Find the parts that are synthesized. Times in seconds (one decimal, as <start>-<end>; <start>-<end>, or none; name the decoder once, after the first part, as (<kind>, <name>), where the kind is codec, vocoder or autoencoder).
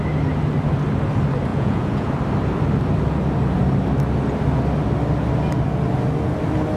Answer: 1.5-2.1 (vocoder, Vocos)